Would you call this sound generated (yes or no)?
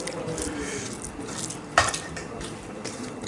yes